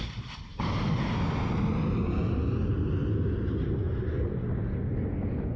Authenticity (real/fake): real